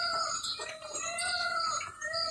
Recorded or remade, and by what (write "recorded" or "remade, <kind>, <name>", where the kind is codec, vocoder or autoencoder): remade, vocoder, BigVGAN v2